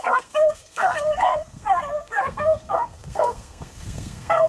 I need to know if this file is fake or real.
fake